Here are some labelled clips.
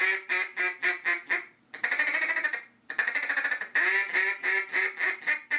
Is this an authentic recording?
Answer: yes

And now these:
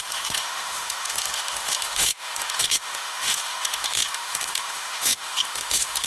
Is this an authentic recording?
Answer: no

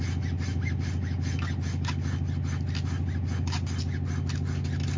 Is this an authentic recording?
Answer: yes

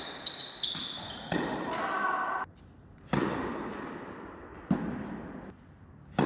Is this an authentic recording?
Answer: yes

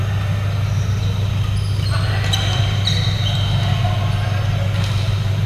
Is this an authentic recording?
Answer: yes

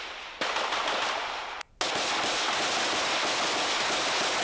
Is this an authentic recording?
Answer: yes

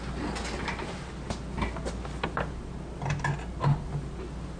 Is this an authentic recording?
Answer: yes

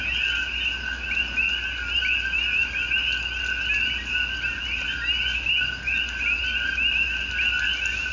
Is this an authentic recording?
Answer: yes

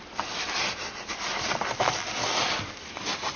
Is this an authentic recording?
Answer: yes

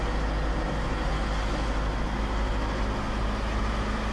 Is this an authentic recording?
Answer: yes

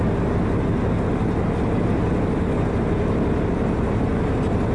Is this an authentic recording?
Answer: yes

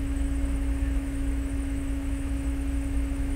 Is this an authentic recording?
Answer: no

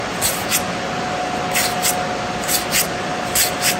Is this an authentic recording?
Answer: yes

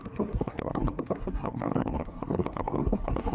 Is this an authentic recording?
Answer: no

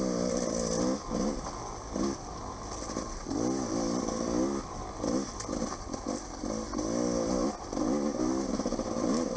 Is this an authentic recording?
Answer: yes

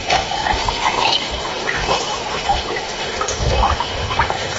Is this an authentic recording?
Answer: no